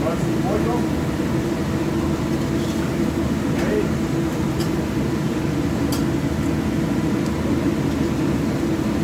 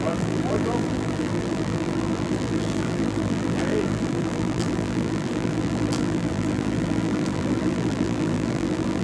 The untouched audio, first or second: first